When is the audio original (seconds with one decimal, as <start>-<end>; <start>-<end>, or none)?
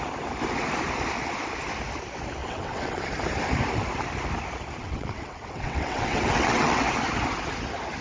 0.0-2.4; 3.1-4.8; 6.8-8.0